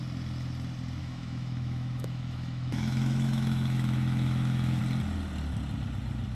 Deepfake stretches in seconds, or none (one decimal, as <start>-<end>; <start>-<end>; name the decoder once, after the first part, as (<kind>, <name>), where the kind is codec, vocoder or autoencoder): 1.0-4.8 (autoencoder, DAC-VAE)